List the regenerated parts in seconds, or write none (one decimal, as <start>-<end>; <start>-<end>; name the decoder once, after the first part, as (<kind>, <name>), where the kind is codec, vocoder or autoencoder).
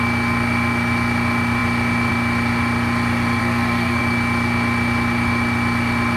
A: 3.4-4.0 (codec, SNAC)